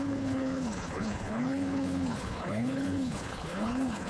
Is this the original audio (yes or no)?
no